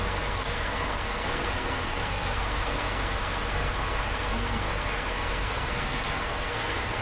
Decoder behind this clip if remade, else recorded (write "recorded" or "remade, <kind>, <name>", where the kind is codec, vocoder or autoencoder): remade, codec, SNAC